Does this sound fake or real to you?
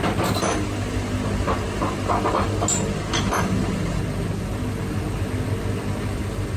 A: real